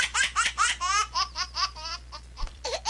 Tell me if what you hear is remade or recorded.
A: remade